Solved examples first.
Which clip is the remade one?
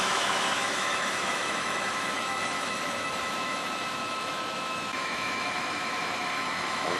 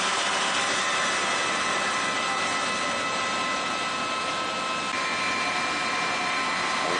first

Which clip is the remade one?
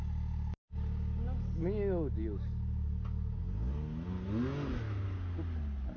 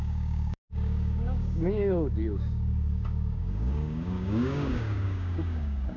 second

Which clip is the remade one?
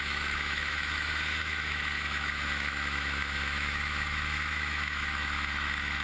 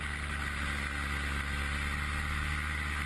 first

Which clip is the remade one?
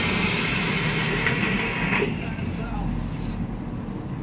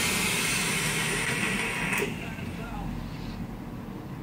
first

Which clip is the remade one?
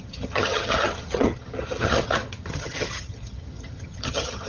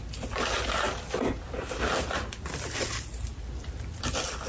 first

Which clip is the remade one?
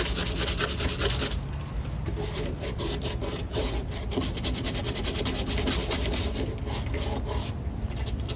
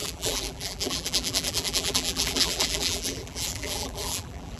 second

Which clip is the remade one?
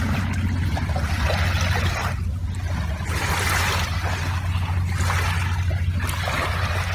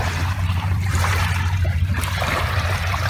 second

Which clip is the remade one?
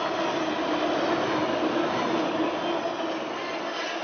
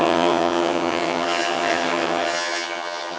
second